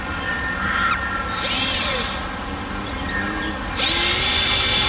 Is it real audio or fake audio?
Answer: real